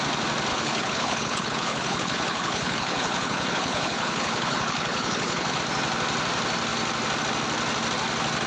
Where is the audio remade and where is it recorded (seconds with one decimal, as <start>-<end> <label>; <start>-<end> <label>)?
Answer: 0.0-0.5 recorded; 0.5-5.6 remade; 5.6-8.5 recorded